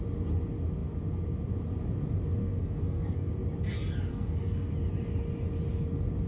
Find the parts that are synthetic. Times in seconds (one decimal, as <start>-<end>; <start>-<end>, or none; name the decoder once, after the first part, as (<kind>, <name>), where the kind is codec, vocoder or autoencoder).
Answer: 2.4-3.3 (codec, SNAC); 4.1-4.7